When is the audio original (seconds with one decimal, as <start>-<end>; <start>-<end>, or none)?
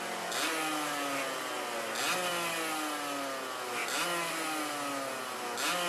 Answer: 0.0-5.9